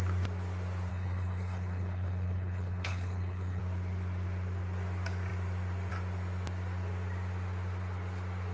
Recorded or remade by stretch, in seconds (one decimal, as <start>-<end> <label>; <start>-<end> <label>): 0.0-0.9 recorded; 0.9-3.6 remade; 3.6-8.5 recorded